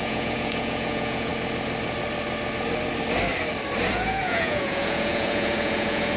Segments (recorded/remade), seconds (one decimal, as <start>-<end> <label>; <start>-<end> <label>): 0.0-1.3 remade; 1.3-3.9 recorded; 3.9-6.2 remade